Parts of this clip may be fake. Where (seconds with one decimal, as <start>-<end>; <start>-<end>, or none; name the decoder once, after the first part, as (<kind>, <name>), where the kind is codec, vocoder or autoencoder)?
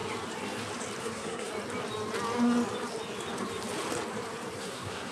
1.0-1.5 (codec, SNAC); 4.6-5.1